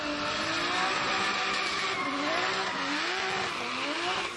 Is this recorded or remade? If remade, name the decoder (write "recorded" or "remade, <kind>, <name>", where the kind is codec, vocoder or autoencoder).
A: recorded